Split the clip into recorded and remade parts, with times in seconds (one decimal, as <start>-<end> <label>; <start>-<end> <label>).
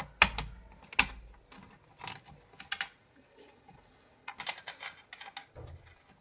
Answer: 0.0-3.0 recorded; 3.0-4.3 remade; 4.3-6.2 recorded